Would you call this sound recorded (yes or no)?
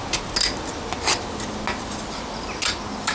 yes